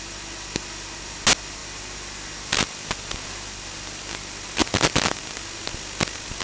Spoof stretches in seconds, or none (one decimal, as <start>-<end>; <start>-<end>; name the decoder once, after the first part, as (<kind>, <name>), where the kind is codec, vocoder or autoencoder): none